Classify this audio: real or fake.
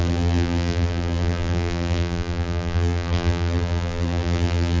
fake